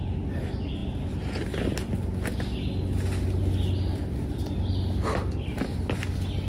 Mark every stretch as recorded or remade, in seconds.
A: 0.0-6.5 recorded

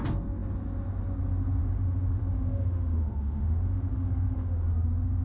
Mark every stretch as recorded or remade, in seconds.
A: 0.0-1.6 recorded; 1.6-4.7 remade; 4.7-5.2 recorded

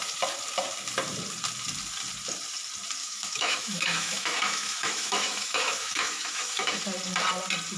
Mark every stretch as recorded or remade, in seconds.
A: 0.0-3.0 recorded; 3.0-6.8 remade; 6.8-7.8 recorded

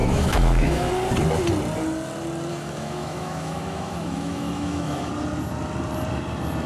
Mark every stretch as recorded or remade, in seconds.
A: 0.0-0.9 remade; 0.9-2.5 recorded; 2.5-5.1 remade; 5.1-6.7 recorded

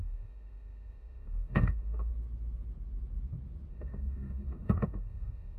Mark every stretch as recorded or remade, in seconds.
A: 0.0-2.1 remade; 2.1-3.7 recorded; 3.7-5.6 remade

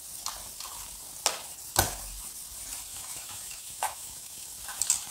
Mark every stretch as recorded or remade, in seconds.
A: 0.0-2.9 recorded; 2.9-4.5 remade; 4.5-5.1 recorded

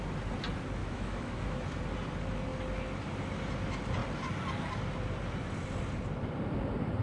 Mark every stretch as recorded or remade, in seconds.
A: 0.0-0.8 recorded; 0.8-1.8 remade; 1.8-7.0 recorded

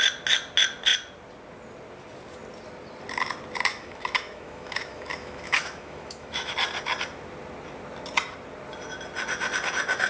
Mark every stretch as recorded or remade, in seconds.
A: 0.0-3.7 recorded; 3.7-6.5 remade; 6.5-10.1 recorded